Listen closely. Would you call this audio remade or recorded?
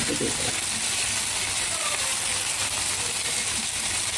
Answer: recorded